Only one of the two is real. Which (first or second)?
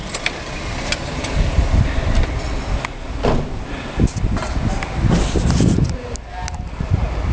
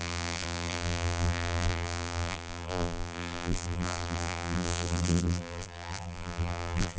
first